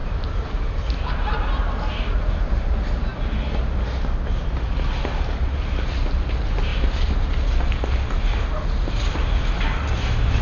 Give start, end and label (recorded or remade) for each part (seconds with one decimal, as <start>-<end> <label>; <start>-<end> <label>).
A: 0.0-10.4 recorded